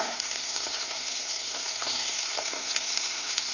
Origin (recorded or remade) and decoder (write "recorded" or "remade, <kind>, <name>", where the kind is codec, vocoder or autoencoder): remade, codec, SNAC